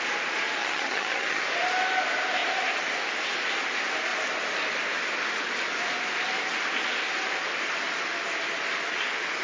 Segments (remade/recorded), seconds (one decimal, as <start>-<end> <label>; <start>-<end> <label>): 0.0-0.6 recorded; 0.6-1.4 remade; 1.4-9.4 recorded